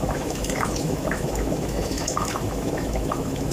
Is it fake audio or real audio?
fake